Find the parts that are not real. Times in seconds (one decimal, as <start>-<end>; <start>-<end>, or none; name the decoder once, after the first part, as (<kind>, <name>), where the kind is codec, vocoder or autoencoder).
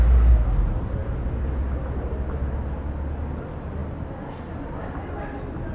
none